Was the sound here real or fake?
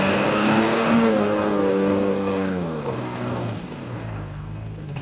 fake